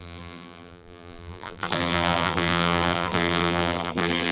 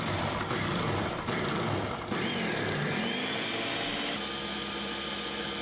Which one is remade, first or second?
first